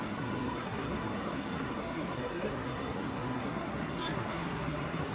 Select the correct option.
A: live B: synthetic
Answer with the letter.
B